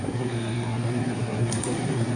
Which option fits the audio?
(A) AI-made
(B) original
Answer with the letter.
A